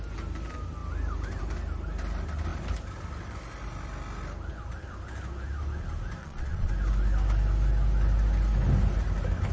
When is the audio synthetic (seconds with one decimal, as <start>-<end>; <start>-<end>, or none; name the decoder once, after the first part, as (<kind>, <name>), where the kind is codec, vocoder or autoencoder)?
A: 6.2-6.7 (vocoder, Vocos)

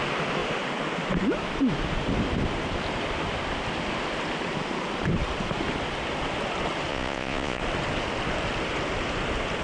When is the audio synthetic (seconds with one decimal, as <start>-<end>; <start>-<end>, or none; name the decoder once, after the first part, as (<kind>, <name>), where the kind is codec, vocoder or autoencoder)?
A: 6.9-7.6 (vocoder, Vocos)

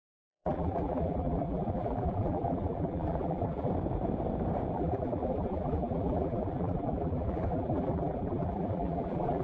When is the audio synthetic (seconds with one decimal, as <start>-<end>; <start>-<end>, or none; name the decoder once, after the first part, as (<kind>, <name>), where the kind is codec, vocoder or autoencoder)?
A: 0.0-3.7 (vocoder, BigVGAN v2); 4.7-9.4

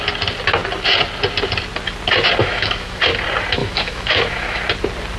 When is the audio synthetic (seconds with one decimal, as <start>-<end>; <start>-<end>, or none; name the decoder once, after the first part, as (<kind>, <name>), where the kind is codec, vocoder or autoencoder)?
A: 2.4-3.0 (autoencoder, DAC-VAE); 3.6-4.6

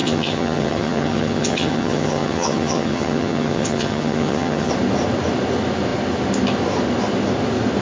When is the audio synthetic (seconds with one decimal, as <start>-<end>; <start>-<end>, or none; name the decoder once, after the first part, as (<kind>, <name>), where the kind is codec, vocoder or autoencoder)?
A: 0.0-4.7 (vocoder, HiFi-GAN)

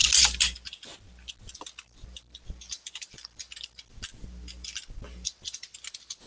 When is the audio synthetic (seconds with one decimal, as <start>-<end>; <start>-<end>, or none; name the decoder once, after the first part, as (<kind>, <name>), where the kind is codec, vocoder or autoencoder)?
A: 1.6-6.3 (vocoder, BigVGAN v2)

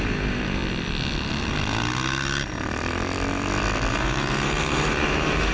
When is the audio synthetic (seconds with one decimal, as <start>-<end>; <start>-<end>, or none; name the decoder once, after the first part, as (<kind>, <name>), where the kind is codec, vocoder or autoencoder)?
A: 0.0-0.6 (vocoder, BigVGAN v2); 3.9-5.5